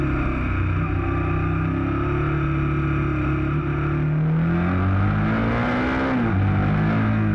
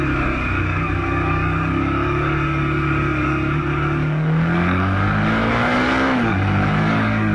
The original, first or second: first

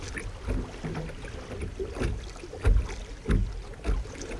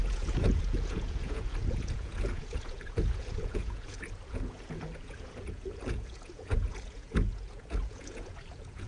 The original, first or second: first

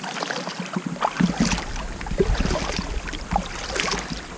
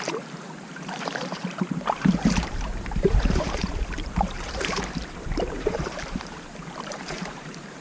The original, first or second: first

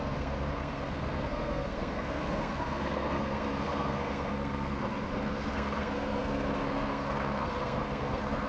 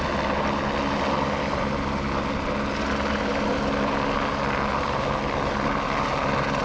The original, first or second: second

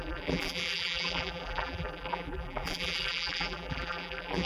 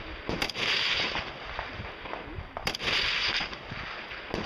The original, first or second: second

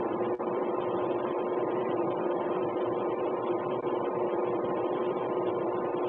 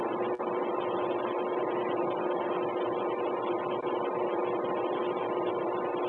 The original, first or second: second